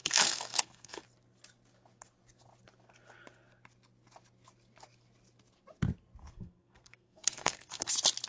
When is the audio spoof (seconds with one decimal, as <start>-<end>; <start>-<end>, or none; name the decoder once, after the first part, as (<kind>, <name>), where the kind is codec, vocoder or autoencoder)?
0.0-1.0 (codec, SNAC); 6.2-7.9